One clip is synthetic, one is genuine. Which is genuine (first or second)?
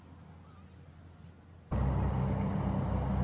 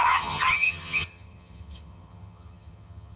first